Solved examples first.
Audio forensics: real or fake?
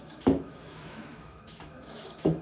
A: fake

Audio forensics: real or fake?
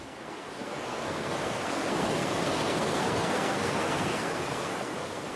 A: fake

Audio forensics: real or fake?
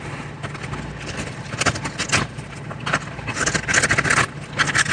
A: real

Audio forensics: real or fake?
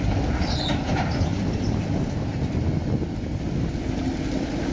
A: real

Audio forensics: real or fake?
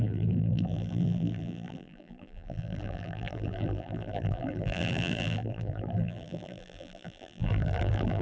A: fake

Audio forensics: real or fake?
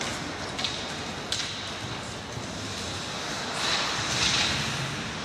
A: real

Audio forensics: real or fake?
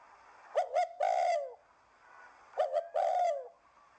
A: real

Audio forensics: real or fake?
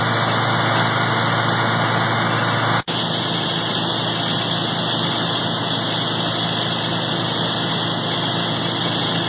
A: real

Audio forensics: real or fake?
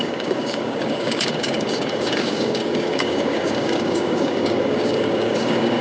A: fake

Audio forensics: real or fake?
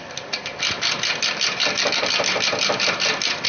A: fake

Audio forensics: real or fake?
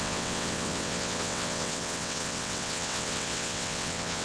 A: fake